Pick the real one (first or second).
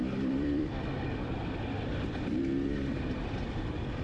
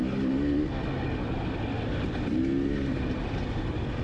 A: second